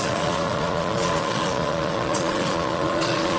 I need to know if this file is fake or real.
fake